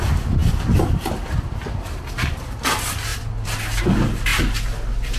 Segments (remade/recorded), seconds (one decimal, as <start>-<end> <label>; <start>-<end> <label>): 0.0-0.4 remade; 0.4-2.5 recorded; 2.5-5.2 remade